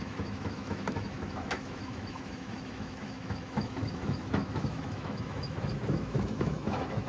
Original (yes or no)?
no